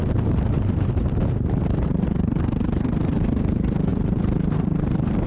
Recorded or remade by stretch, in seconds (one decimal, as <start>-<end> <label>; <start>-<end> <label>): 0.0-5.3 remade